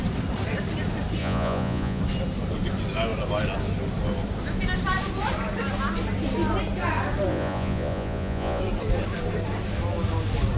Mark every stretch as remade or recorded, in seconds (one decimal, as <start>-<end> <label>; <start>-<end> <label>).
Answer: 0.0-1.2 recorded; 1.2-2.0 remade; 2.0-7.3 recorded; 7.3-8.6 remade; 8.6-10.6 recorded